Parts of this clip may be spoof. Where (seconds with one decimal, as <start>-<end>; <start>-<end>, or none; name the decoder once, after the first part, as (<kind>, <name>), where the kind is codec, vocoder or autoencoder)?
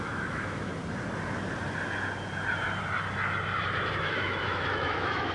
0.0-0.7 (autoencoder, DAC-VAE); 3.9-5.3